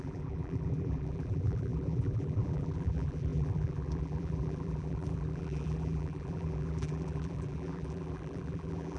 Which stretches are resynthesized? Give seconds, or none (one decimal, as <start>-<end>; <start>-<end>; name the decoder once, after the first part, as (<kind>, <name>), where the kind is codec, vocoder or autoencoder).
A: 0.0-9.0 (vocoder, BigVGAN v2)